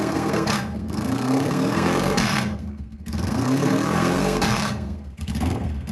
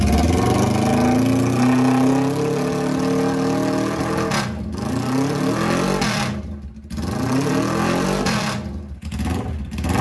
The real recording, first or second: second